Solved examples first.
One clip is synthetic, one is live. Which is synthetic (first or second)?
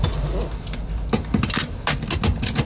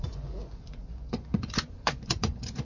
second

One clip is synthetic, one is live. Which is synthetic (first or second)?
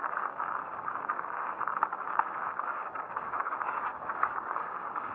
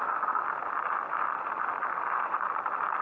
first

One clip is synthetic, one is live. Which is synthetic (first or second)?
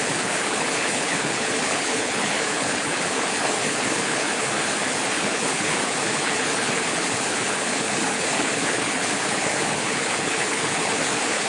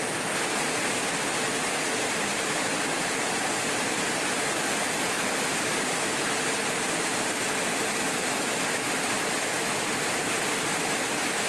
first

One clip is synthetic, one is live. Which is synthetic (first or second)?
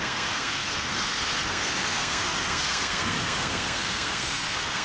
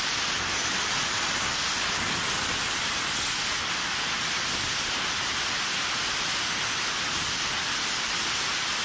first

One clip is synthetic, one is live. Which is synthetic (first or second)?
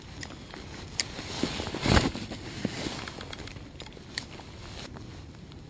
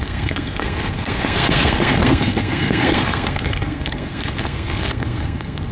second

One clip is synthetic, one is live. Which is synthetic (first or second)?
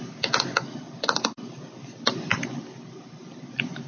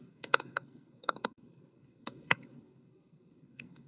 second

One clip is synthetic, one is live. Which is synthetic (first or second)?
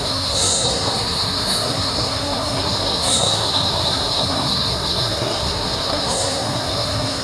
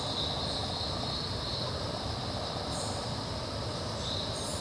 first